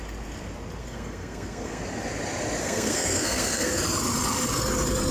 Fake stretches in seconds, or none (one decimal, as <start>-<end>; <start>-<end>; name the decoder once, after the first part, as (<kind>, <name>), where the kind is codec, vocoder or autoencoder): 0.8-1.8 (codec, SNAC); 2.6-3.8